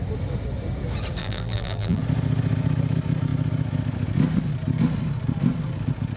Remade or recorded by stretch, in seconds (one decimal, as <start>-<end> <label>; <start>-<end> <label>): 0.0-1.2 recorded; 1.2-2.0 remade; 2.0-6.2 recorded